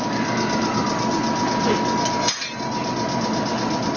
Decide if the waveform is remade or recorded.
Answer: recorded